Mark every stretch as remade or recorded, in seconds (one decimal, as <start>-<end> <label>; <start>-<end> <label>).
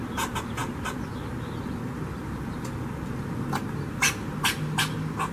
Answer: 0.0-5.3 recorded